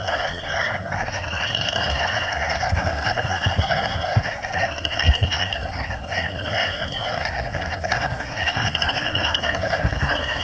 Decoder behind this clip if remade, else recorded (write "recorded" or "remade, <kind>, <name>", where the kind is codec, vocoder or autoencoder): remade, codec, SNAC